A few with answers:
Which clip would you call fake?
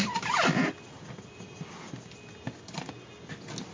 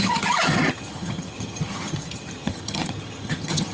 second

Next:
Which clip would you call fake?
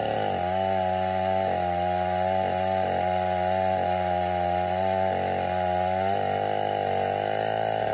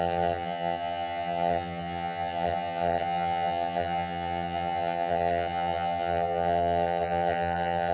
second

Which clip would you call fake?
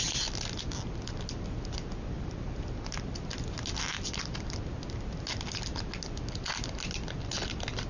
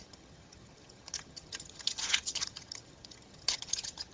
second